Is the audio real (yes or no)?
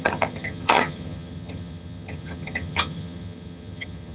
no